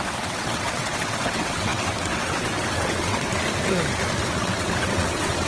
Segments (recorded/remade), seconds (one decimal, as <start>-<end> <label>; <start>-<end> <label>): 0.0-3.3 remade; 3.3-4.4 recorded; 4.4-5.5 remade